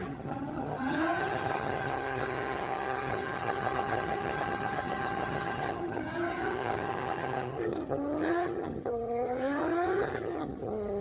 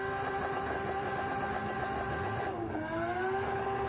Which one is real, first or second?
second